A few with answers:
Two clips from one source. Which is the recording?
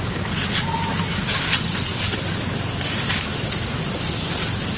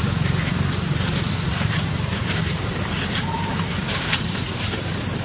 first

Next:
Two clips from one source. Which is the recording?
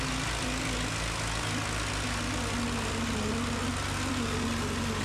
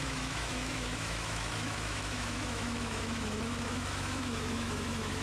first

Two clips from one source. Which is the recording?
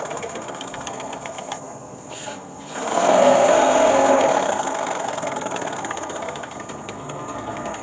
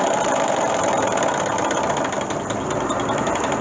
second